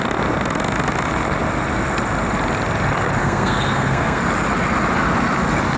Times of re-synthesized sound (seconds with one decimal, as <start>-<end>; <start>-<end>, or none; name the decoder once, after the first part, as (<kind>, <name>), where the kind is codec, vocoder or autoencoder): 3.2-4.2 (codec, SNAC)